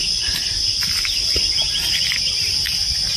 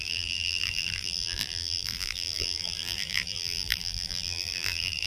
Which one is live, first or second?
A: first